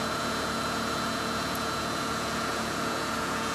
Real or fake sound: fake